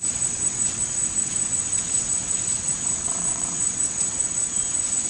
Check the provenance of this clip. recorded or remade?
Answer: remade